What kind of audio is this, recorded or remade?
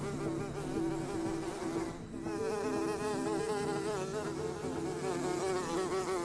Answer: recorded